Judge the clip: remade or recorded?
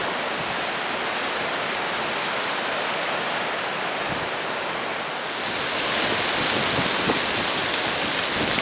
recorded